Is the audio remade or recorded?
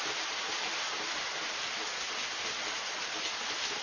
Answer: recorded